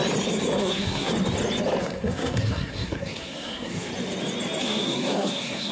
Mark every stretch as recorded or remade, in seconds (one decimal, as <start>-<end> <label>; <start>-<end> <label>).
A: 0.0-0.6 recorded; 0.6-1.1 remade; 1.1-1.8 recorded; 1.8-3.9 remade; 3.9-4.6 recorded; 4.6-5.7 remade